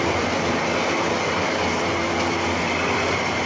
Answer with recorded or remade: recorded